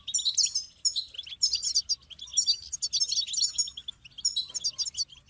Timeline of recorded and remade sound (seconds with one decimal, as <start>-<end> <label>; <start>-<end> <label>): 0.0-5.3 recorded